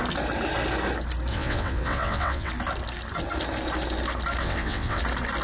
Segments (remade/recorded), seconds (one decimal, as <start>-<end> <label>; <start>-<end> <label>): 0.0-1.3 recorded; 1.3-2.5 remade; 2.5-4.4 recorded; 4.4-5.0 remade; 5.0-5.4 recorded